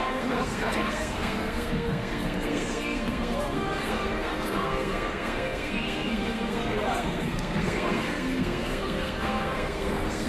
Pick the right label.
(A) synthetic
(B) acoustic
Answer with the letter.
A